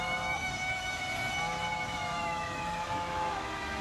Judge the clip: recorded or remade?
remade